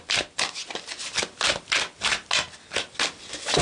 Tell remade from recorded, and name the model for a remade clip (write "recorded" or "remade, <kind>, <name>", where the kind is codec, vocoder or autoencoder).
recorded